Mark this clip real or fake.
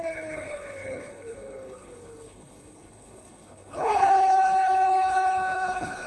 fake